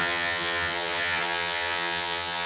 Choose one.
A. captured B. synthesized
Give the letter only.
B